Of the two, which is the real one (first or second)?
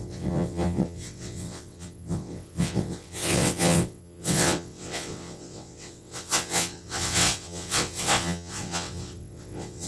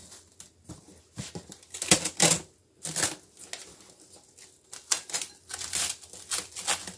second